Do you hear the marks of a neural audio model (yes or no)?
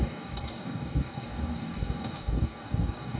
yes